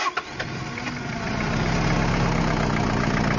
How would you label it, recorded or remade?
recorded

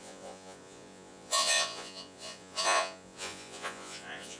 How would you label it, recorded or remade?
remade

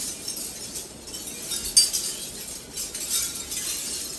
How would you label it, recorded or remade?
recorded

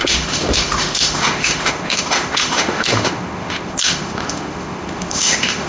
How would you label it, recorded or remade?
remade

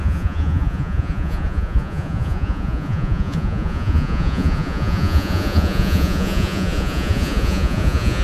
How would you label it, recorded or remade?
remade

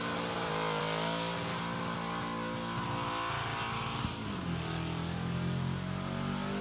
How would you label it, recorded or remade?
recorded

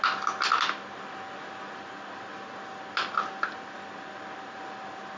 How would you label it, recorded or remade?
recorded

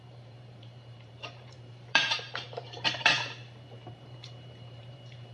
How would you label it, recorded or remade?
remade